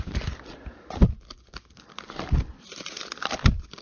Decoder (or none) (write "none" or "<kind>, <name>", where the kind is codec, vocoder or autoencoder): none